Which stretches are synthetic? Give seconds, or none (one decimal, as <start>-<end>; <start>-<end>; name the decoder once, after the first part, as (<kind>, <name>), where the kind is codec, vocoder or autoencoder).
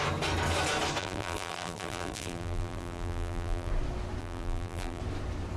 1.0-3.7 (vocoder, BigVGAN v2); 4.2-5.0